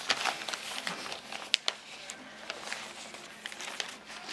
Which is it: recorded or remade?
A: recorded